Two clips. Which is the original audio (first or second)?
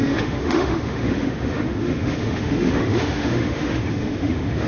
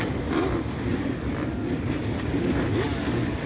second